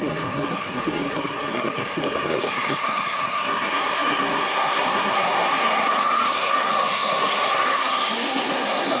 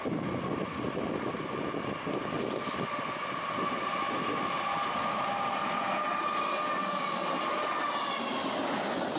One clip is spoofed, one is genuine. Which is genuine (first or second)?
second